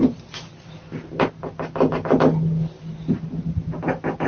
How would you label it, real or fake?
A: real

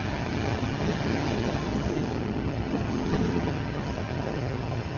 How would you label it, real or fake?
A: fake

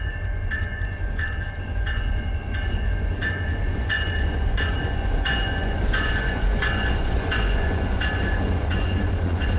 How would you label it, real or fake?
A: fake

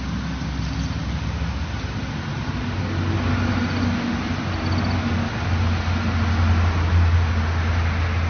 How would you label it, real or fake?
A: real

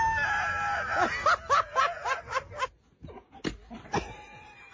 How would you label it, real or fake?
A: real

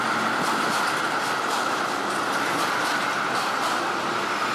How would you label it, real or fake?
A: real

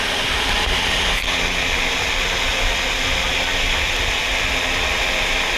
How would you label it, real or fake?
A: real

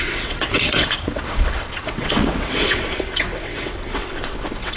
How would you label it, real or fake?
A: fake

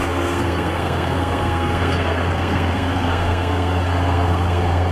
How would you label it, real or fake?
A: fake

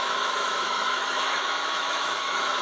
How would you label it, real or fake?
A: fake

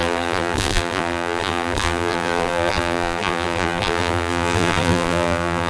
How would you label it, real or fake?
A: fake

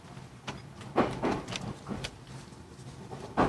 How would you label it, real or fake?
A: real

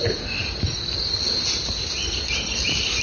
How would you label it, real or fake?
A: real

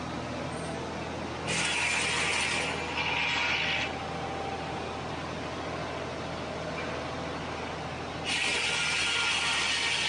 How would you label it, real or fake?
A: real